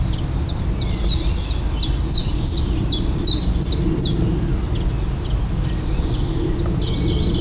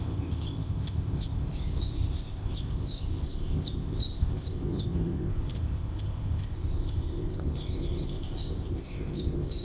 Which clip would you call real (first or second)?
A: first